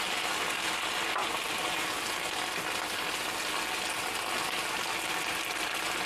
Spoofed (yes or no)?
no